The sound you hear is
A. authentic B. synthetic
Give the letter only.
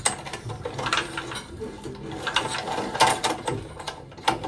A